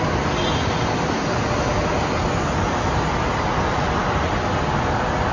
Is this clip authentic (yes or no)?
yes